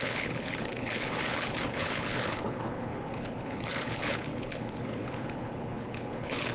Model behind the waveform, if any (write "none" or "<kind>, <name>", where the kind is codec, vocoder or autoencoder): codec, HILCodec